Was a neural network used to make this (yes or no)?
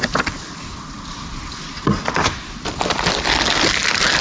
no